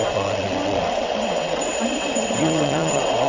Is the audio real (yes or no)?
no